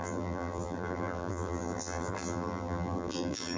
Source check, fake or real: fake